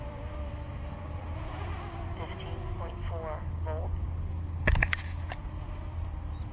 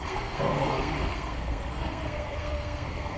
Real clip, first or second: first